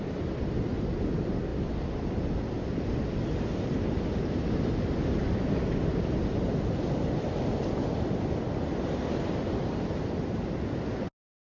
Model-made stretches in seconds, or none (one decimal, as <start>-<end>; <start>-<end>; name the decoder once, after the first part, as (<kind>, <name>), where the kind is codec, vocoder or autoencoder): none